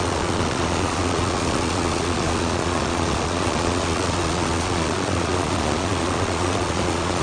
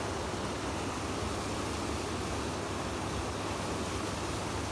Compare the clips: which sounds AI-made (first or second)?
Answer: first